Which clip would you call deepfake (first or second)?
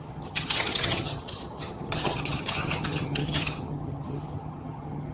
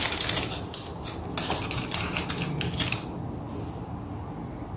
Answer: first